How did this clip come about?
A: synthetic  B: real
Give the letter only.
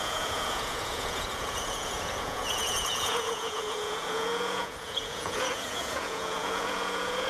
A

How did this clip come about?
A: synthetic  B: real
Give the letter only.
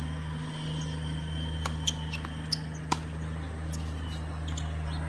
B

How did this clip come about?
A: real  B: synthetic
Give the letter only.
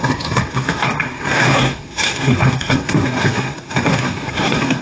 B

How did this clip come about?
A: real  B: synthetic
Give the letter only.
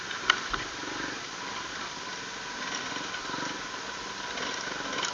A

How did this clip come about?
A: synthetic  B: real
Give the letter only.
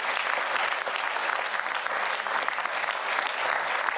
B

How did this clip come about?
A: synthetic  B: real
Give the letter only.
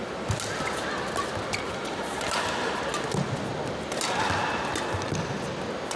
B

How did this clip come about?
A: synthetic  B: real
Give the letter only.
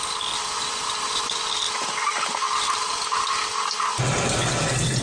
B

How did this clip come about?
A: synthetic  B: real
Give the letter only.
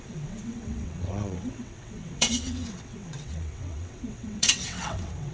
A